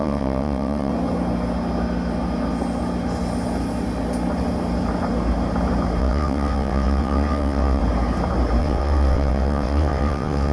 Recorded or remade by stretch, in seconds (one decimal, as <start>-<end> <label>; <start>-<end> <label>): 0.0-0.9 remade; 0.9-6.0 recorded; 6.0-7.8 remade; 7.8-8.6 recorded; 8.6-10.5 remade